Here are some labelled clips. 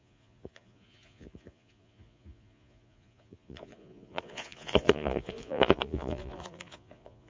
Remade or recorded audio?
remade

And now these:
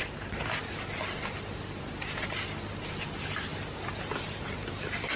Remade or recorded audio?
recorded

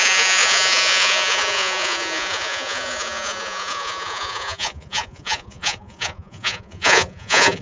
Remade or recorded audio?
remade